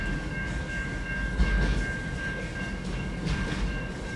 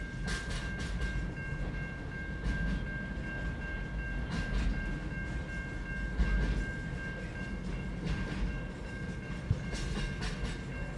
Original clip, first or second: second